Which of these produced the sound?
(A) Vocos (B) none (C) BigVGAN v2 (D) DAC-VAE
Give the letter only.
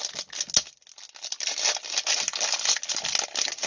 B